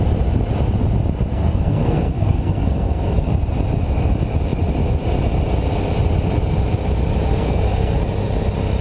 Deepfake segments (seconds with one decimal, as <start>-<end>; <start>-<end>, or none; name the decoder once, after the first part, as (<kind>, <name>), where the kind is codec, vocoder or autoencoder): 1.3-3.3 (codec, SNAC); 7.3-8.0